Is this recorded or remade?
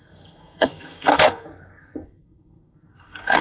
remade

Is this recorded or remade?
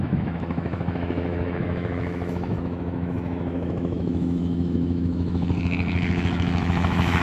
remade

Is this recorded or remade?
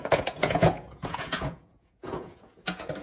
remade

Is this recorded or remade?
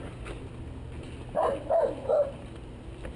recorded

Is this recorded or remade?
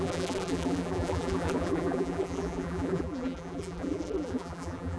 remade